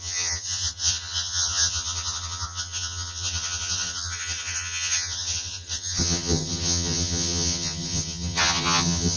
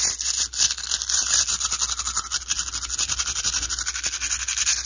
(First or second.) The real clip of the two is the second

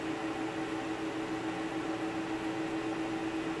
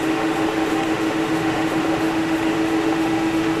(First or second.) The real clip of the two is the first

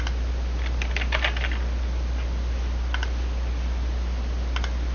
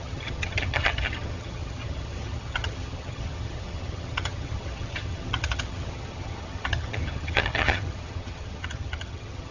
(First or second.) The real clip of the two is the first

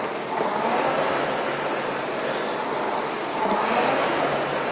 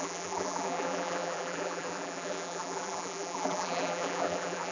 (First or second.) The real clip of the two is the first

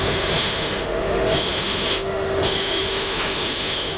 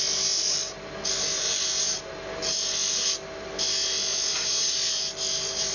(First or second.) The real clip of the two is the second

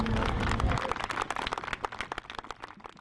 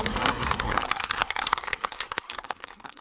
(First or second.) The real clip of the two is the first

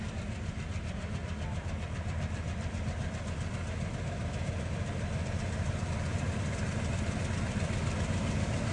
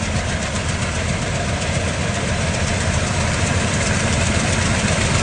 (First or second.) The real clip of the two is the first